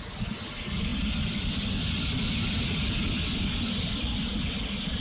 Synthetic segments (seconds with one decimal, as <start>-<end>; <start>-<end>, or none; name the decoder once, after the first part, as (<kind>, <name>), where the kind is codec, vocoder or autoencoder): none